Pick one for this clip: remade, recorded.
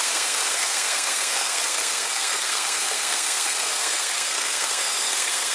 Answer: remade